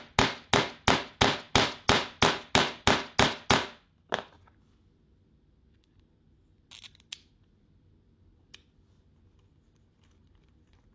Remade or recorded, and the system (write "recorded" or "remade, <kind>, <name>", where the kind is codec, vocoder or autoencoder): recorded